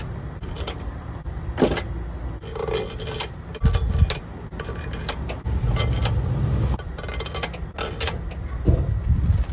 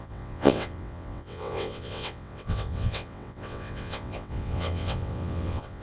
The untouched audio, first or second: first